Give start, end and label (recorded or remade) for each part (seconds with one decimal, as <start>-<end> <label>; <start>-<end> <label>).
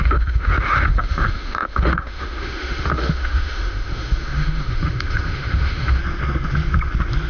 0.0-6.0 remade; 6.0-7.3 recorded